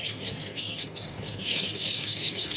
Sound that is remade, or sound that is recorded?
remade